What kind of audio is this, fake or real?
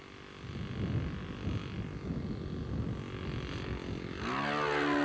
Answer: real